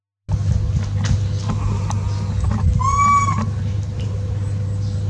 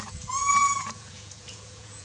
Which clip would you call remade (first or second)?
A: second